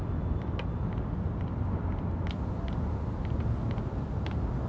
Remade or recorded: recorded